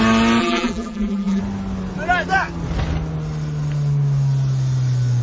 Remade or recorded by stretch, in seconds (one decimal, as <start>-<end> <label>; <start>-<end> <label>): 0.0-0.4 recorded; 0.4-1.4 remade; 1.4-5.2 recorded